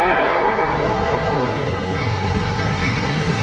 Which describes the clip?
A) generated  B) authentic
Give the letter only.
A